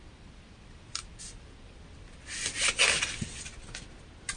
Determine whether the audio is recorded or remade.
recorded